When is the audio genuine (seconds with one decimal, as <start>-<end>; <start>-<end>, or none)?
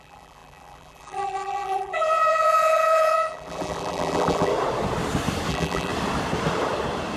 4.5-5.5; 5.9-7.2